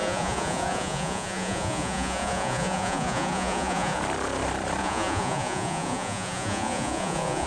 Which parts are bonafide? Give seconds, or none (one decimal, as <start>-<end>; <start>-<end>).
4.0-4.8